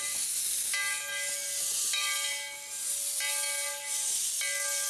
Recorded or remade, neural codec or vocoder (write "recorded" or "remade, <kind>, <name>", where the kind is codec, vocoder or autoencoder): recorded